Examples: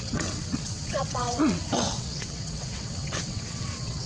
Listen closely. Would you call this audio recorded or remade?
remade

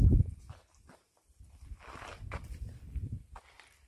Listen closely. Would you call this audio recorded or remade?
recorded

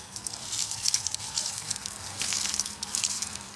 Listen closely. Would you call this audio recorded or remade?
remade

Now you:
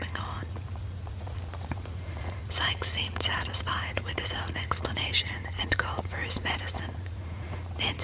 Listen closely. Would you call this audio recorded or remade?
remade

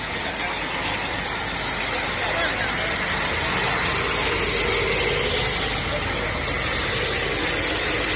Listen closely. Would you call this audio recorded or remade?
recorded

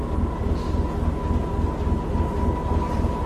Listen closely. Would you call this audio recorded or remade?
recorded